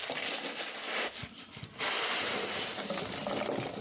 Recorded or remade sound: recorded